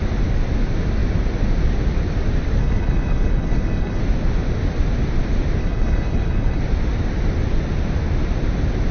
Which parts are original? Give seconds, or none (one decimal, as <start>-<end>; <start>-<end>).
0.0-2.6; 4.0-5.6; 6.6-8.9